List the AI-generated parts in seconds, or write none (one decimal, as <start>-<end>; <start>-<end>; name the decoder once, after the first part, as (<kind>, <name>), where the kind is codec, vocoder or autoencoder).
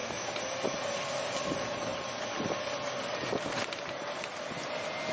0.8-1.9 (vocoder, BigVGAN v2)